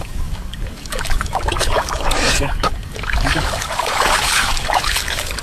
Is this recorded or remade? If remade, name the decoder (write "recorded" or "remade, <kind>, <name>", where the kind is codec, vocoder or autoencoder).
remade, codec, DAC